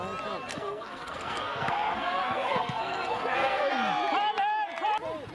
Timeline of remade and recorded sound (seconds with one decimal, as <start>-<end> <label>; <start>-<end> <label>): 0.0-0.5 recorded; 0.5-3.7 remade; 3.7-5.3 recorded